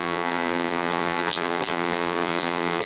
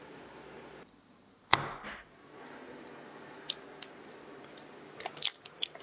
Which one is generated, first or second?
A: first